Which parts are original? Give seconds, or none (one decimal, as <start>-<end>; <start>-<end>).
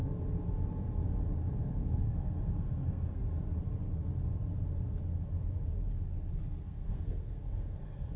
0.0-1.6; 3.2-6.5